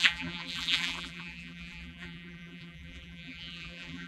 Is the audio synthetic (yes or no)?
yes